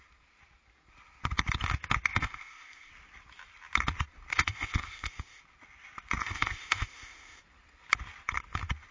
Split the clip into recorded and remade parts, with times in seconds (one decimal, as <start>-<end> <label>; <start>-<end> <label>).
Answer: 0.0-2.1 recorded; 2.1-2.9 remade; 2.9-4.3 recorded; 4.3-5.4 remade; 5.4-6.2 recorded; 6.2-7.4 remade; 7.4-8.9 recorded